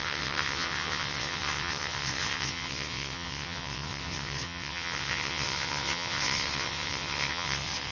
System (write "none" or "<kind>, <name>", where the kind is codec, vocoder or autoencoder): vocoder, WaveNeXt